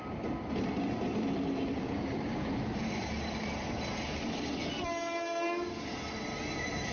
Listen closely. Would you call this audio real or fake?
real